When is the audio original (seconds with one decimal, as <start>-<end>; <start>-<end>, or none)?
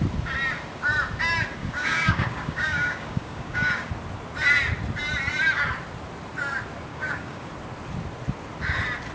0.0-1.6; 3.9-6.9; 7.5-9.1